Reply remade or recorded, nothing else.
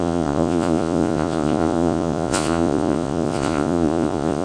remade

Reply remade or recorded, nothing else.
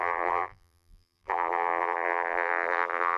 remade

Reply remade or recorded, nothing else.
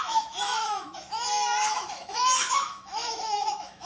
remade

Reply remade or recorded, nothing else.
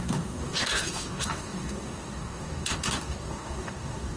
remade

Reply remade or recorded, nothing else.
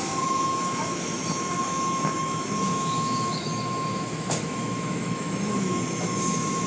remade